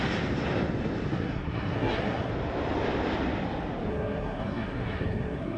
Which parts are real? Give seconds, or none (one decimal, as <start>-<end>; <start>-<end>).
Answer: 0.0-1.1; 2.3-3.9

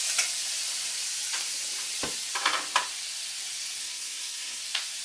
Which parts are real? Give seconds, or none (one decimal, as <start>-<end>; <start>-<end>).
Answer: 0.0-3.8; 4.6-5.0

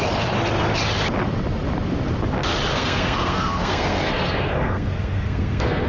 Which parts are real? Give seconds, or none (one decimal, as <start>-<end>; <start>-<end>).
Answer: 0.0-2.7

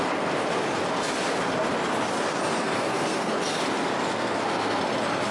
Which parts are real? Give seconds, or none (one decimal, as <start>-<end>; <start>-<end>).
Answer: 0.0-2.6; 3.3-4.1; 4.8-5.3

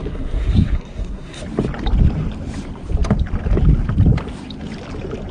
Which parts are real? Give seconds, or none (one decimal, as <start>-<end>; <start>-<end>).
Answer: 1.4-5.3

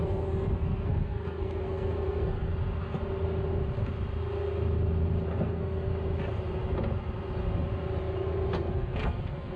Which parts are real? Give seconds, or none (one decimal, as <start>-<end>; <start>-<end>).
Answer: 2.5-5.3; 5.9-8.7

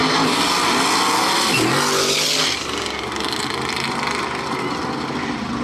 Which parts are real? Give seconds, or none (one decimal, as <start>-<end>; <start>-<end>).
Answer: 0.0-5.6

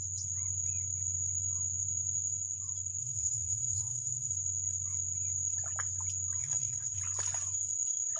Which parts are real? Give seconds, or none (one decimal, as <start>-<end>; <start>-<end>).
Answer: 0.0-3.0; 4.3-6.4; 7.0-8.2